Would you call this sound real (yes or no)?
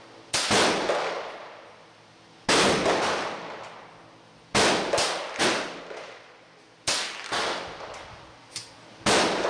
yes